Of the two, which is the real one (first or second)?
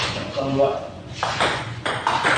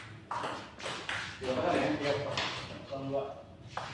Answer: second